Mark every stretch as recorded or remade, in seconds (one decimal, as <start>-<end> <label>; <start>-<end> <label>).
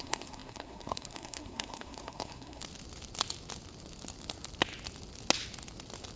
0.0-2.6 remade; 2.6-6.2 recorded